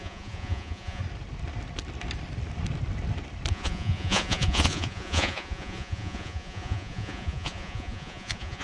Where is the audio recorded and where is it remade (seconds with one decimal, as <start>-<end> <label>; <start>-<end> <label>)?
0.0-1.0 remade; 1.0-3.5 recorded; 3.5-8.6 remade